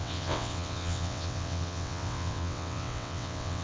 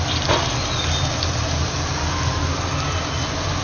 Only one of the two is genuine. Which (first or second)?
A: second